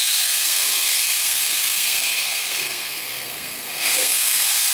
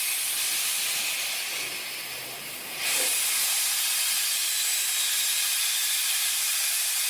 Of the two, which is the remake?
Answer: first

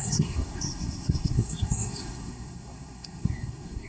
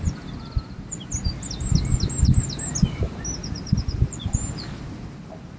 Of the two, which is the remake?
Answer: first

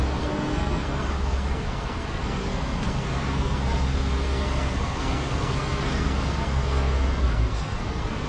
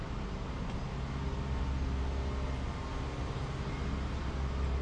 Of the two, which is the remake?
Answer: first